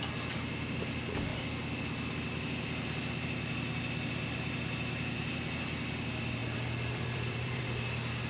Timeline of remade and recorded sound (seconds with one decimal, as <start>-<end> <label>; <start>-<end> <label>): 0.0-6.4 recorded; 6.4-7.6 remade; 7.6-8.3 recorded